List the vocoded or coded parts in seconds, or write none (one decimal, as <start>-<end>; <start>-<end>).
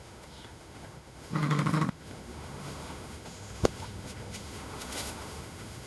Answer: 0.0-5.9